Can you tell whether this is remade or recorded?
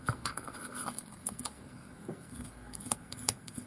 remade